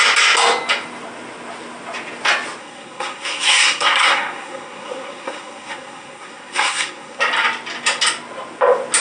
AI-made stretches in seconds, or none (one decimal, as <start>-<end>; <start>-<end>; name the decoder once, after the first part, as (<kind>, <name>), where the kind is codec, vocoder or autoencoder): 2.6-7.2 (codec, SNAC)